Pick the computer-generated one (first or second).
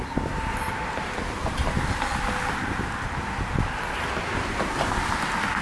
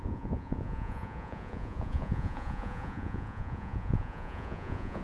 second